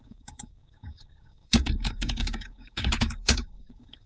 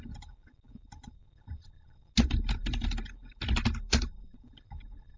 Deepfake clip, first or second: first